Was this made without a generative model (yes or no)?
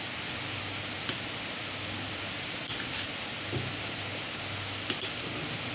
yes